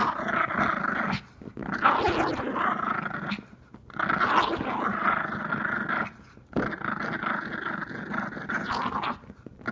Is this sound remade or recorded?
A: recorded